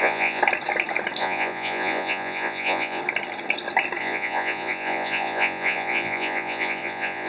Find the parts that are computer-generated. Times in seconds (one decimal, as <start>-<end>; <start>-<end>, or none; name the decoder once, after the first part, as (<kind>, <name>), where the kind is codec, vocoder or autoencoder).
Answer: 0.0-0.4 (vocoder, Vocos); 1.2-3.0; 4.0-7.3